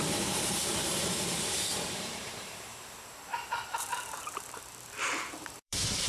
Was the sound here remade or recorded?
remade